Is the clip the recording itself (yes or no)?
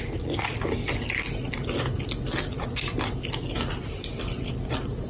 yes